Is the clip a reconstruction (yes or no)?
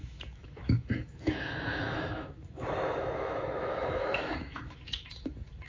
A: yes